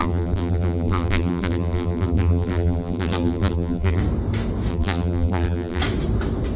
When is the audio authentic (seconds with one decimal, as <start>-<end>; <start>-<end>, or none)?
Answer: 4.0-4.7; 5.8-6.6